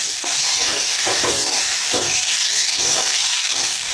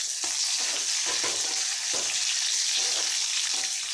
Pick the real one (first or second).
second